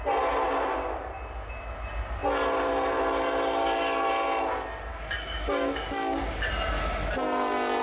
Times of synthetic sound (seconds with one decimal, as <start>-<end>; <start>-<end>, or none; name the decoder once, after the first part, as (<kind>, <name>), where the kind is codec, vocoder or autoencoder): 3.6-4.1 (codec, DAC); 4.9-6.5